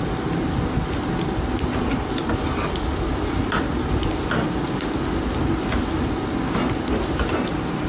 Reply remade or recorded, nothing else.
recorded